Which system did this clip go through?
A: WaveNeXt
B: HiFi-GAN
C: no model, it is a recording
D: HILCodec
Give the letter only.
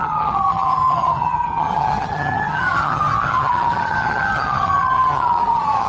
B